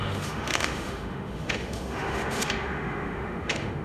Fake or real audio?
fake